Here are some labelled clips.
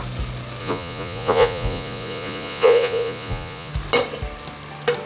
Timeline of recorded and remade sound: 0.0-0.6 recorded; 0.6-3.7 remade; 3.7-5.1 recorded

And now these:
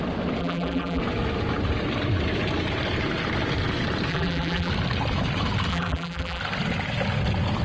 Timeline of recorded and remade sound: 0.0-0.4 recorded; 0.4-1.0 remade; 1.0-4.1 recorded; 4.1-4.7 remade; 4.7-5.7 recorded; 5.7-6.4 remade; 6.4-7.6 recorded

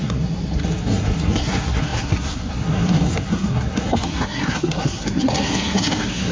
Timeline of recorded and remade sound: 0.0-6.3 remade

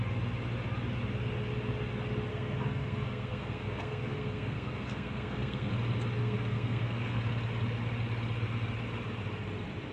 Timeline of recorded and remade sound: 0.0-2.3 recorded; 2.3-5.7 remade; 5.7-6.2 recorded; 6.2-7.2 remade; 7.2-9.9 recorded

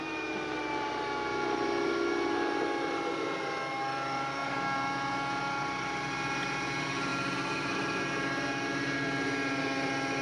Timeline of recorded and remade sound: 0.0-10.2 recorded